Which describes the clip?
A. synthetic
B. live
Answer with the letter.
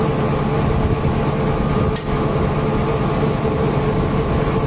B